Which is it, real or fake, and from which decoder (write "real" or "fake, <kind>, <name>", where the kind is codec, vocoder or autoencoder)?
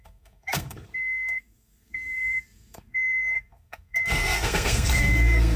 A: fake, codec, SNAC